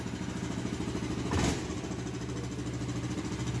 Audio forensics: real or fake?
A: real